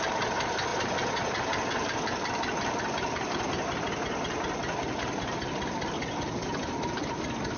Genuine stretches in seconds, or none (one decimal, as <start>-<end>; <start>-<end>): 0.0-0.7; 3.8-7.6